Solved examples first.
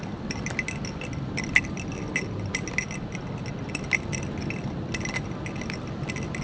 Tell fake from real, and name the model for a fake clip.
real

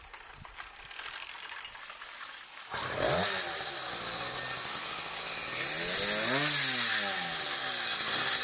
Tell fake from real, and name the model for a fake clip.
real